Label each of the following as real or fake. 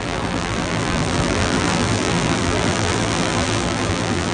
fake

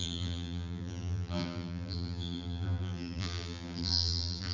fake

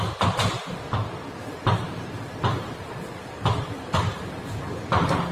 real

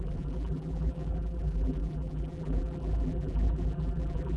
fake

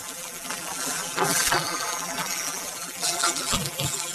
fake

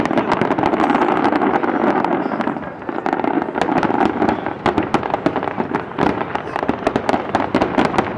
real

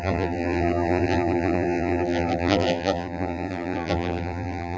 fake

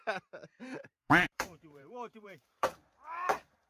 fake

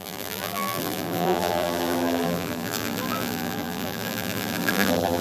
fake